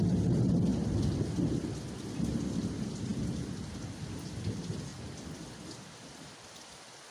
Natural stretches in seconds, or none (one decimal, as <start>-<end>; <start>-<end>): 0.0-3.1; 3.6-4.9; 5.8-7.1